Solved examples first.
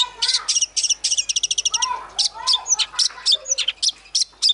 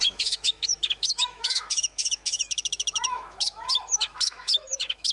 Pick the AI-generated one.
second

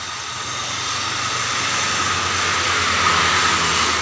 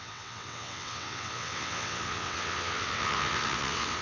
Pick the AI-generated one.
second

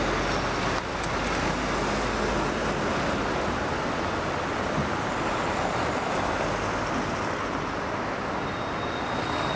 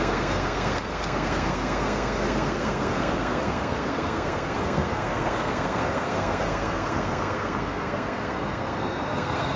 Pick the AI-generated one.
second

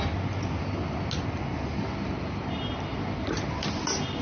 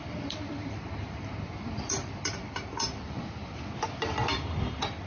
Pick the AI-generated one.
second